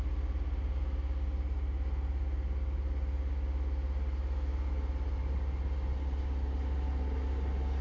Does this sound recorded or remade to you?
recorded